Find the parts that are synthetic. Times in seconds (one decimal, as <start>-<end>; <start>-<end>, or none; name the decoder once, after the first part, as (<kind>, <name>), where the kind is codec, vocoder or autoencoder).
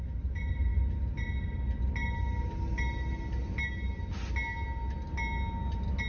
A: none